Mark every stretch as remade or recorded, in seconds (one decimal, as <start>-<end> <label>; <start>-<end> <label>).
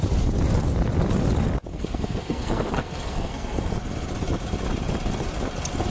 0.0-1.7 recorded; 1.7-3.7 remade; 3.7-5.9 recorded